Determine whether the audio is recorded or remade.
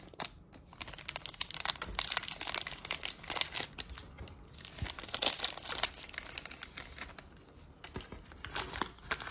recorded